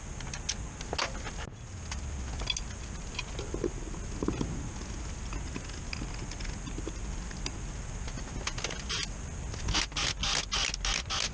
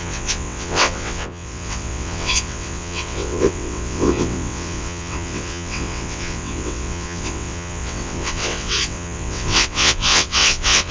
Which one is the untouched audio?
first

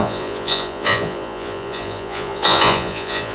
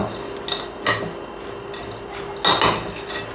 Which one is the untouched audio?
second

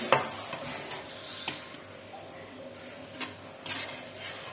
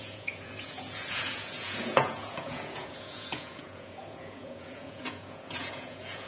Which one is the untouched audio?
first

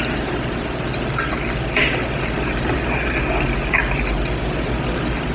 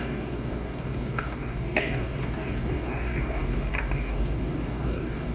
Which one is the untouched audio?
first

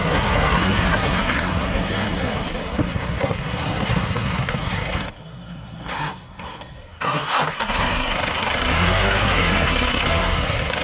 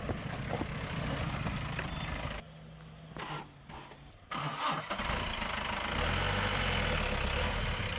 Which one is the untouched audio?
second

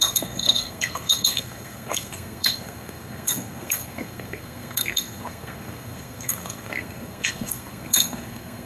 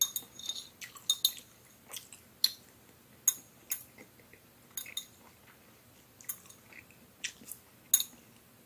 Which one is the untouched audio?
second